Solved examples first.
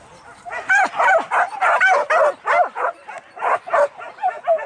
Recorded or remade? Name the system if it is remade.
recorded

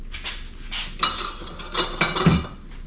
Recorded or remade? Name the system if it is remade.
recorded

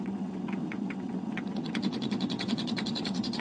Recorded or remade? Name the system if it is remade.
remade, vocoder, WaveNeXt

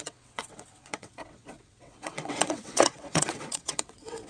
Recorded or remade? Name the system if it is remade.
remade, vocoder, WaveNeXt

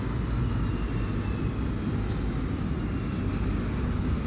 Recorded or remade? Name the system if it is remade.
recorded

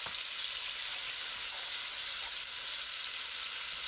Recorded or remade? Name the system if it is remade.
recorded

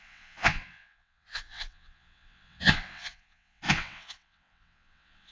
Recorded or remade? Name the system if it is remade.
remade, vocoder, WaveNeXt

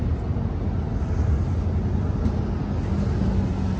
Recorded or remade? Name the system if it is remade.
recorded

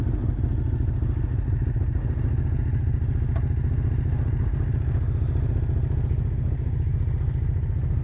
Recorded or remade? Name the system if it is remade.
recorded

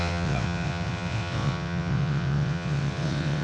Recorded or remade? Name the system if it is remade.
remade, vocoder, WaveNeXt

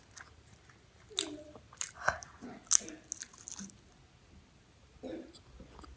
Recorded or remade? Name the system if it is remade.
recorded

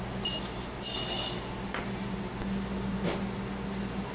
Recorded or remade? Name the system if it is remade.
recorded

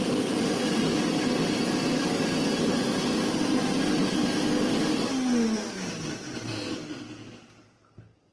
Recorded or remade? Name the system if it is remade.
recorded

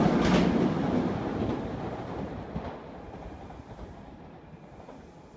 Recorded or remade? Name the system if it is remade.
recorded